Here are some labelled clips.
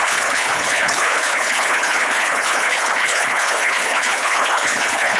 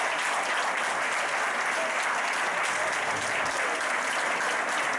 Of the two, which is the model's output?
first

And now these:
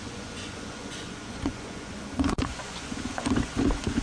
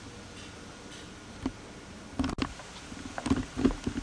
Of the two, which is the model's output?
first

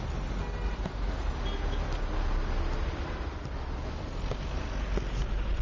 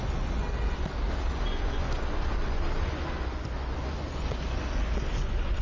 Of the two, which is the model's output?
second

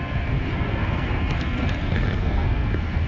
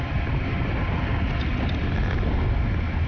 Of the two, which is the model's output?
first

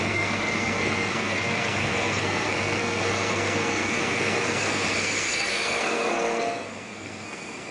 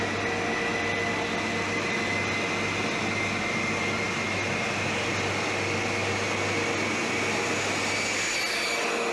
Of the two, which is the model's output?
first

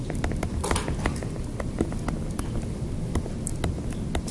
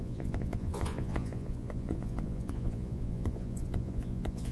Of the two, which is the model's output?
second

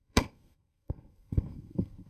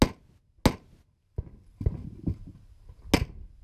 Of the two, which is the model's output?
first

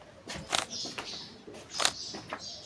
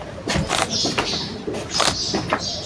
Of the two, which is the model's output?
second